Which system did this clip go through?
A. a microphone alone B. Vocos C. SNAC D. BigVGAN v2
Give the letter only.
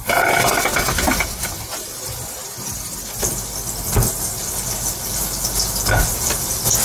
A